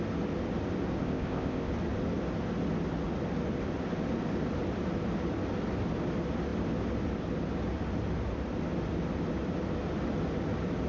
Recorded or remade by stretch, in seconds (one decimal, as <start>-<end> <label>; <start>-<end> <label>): 0.0-1.0 recorded; 1.0-1.7 remade; 1.7-10.9 recorded